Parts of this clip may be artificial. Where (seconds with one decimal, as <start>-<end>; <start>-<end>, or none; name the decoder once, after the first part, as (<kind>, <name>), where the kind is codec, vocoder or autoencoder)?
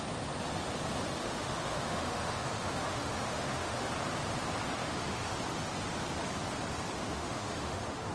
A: 1.2-3.9 (autoencoder, DAC-VAE); 4.8-5.4; 7.0-8.1